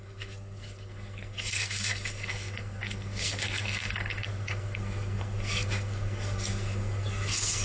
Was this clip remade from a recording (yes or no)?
yes